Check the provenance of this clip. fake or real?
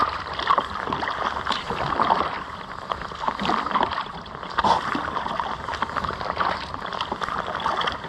real